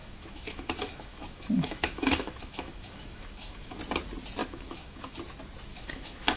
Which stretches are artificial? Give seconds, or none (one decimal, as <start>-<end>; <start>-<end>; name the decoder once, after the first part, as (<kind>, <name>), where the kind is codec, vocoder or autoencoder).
0.0-3.8 (autoencoder, DAC-VAE); 4.4-5.2; 5.7-6.4